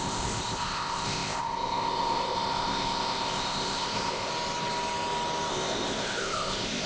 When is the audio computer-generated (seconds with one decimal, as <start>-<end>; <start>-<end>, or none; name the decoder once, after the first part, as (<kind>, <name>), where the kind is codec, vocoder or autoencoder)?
0.0-4.3 (codec, ZipCodec); 5.5-6.9